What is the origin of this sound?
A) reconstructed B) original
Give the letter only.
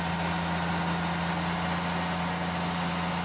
B